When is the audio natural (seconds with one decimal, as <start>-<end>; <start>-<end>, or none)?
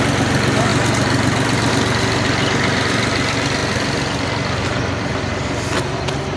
0.0-6.4